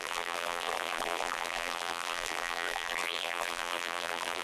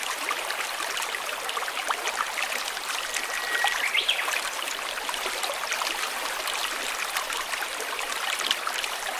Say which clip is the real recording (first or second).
second